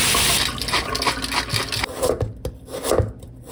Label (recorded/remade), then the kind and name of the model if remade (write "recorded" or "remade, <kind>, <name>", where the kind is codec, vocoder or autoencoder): recorded